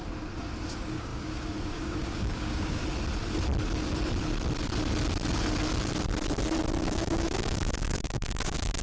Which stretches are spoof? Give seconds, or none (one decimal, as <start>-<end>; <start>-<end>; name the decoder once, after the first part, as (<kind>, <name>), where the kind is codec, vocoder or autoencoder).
0.7-2.8 (codec, DAC); 6.8-8.8